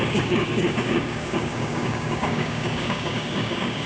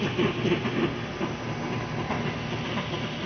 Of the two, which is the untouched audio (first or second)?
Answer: second